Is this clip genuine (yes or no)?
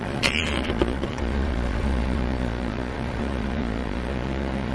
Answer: no